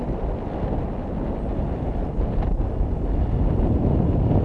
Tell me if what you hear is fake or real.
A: real